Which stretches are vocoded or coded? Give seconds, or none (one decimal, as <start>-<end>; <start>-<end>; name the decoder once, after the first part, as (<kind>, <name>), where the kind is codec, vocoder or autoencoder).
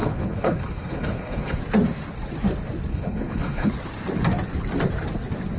0.0-1.6 (codec, HILCodec); 2.9-3.7